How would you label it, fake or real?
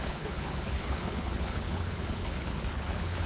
fake